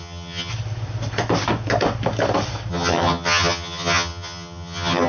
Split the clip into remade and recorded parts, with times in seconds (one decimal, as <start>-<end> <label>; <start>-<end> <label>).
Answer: 0.0-0.5 remade; 0.5-2.7 recorded; 2.7-5.1 remade